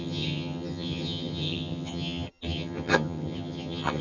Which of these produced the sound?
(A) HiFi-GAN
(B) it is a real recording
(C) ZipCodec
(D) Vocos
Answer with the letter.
A